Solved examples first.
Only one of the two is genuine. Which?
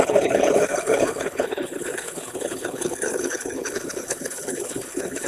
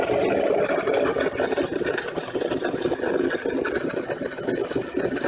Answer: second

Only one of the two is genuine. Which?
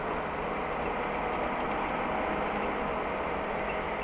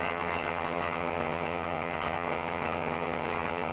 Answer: first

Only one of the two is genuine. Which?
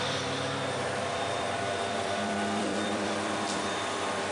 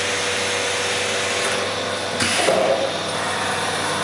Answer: second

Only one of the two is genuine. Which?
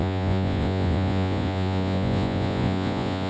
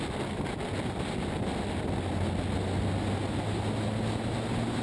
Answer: second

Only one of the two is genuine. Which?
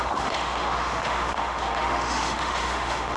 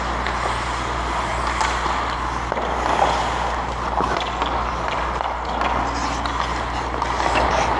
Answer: second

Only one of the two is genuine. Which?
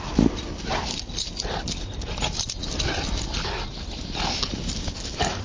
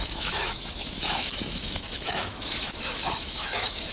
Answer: first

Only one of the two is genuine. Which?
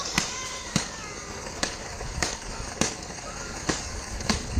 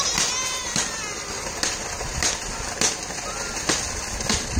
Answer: second